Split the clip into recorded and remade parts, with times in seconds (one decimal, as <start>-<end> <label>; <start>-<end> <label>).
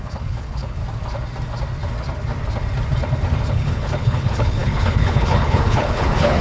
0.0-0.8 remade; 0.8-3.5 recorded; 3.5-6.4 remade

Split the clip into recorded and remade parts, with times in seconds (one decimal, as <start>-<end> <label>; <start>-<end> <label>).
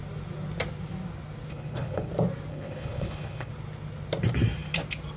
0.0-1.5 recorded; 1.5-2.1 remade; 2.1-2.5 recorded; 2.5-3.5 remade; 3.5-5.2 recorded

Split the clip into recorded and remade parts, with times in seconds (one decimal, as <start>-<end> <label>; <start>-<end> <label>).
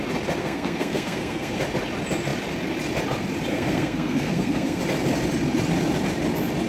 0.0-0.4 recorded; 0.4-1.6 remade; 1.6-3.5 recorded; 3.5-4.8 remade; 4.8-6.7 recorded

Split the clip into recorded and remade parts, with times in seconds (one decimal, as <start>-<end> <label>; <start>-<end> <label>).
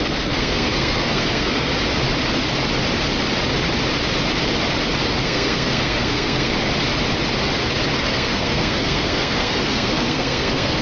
0.0-1.7 remade; 1.7-5.1 recorded; 5.1-6.5 remade; 6.5-8.1 recorded; 8.1-10.8 remade